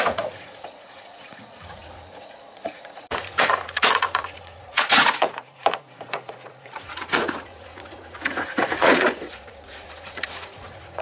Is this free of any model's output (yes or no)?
no